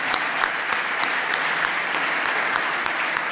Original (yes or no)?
yes